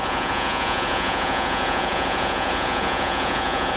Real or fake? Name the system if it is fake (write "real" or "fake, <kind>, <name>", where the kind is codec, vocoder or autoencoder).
fake, vocoder, Vocos